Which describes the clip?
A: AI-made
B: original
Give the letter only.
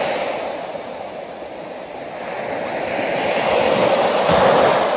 B